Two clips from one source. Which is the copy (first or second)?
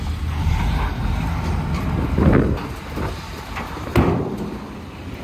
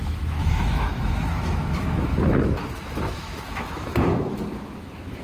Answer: second